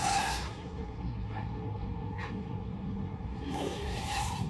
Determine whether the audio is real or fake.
fake